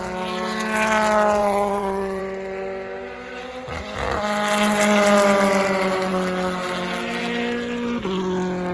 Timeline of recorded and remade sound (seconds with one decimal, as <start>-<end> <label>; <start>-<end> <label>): 0.0-1.4 recorded; 1.4-2.2 remade; 2.2-8.7 recorded

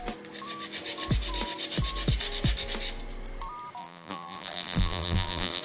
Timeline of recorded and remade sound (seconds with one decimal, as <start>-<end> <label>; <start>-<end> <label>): 0.0-3.8 recorded; 3.8-5.6 remade

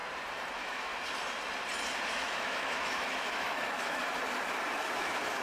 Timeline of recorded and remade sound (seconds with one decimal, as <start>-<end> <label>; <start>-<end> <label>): 0.0-0.5 recorded; 0.5-0.9 remade; 0.9-2.1 recorded; 2.1-4.0 remade; 4.0-4.9 recorded; 4.9-5.4 remade